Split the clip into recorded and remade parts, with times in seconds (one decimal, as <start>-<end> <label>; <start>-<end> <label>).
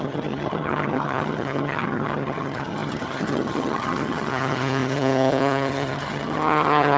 0.0-7.0 remade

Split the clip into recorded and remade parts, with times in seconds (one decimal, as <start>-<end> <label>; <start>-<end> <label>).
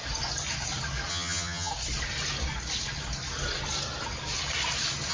0.0-1.1 recorded; 1.1-1.7 remade; 1.7-5.1 recorded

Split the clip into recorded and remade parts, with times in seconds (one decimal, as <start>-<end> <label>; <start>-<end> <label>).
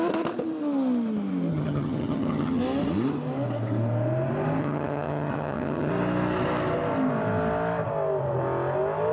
0.0-1.5 recorded; 1.5-2.6 remade; 2.6-4.6 recorded; 4.6-5.9 remade; 5.9-9.1 recorded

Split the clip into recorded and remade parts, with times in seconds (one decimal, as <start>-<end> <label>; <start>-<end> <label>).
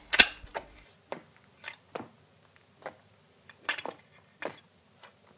0.0-5.4 recorded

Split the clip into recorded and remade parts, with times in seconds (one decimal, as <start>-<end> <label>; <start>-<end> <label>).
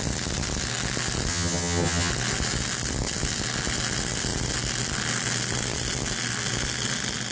0.0-1.3 recorded; 1.3-2.1 remade; 2.1-7.3 recorded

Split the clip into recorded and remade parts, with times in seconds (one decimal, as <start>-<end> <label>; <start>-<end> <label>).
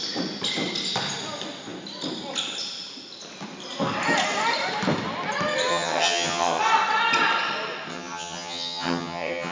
0.0-5.7 recorded; 5.7-6.6 remade; 6.6-7.9 recorded; 7.9-9.5 remade